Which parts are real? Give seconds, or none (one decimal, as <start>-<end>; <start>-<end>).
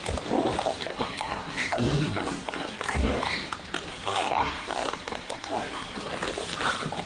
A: 0.0-0.9; 3.2-3.9; 6.1-7.1